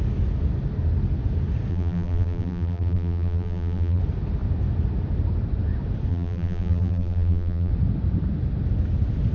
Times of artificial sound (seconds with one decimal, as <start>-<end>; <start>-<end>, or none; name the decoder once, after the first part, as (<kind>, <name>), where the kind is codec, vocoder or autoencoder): 1.7-4.0 (vocoder, BigVGAN v2); 6.1-7.7